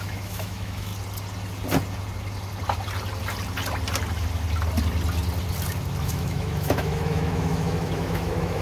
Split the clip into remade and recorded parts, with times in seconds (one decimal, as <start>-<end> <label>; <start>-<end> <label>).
0.0-0.9 remade; 0.9-6.0 recorded; 6.0-8.6 remade